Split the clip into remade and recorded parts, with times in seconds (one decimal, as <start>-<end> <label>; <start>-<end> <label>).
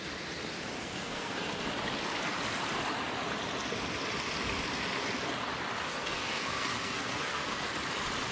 0.0-0.8 recorded; 0.8-1.7 remade; 1.7-5.9 recorded; 5.9-7.7 remade; 7.7-8.3 recorded